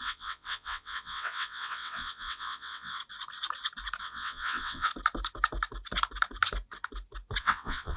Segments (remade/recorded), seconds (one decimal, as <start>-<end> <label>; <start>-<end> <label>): 0.0-3.0 remade; 3.0-4.0 recorded; 4.0-4.9 remade; 4.9-7.4 recorded; 7.4-8.0 remade